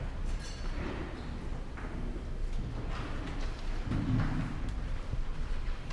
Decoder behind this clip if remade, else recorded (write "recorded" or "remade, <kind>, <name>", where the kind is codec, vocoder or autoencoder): recorded